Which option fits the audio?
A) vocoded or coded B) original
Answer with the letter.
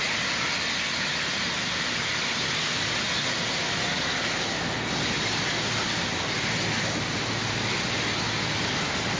B